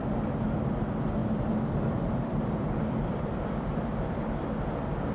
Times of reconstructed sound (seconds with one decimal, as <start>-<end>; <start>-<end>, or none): 1.2-4.3